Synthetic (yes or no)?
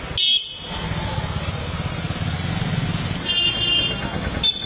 no